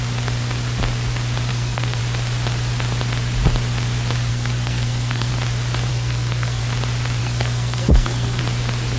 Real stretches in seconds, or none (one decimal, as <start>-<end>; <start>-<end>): 0.0-1.5; 2.0-4.3; 5.3-5.9; 6.6-7.2; 8.4-9.0